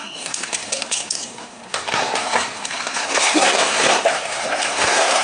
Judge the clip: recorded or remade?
remade